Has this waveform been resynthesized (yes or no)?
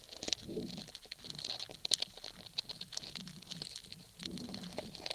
no